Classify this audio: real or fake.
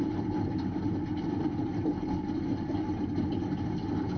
real